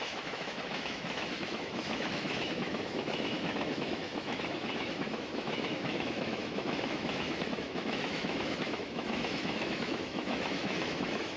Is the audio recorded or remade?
remade